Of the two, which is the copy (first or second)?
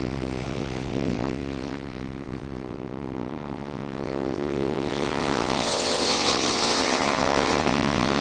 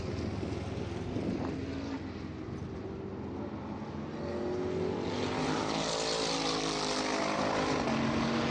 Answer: first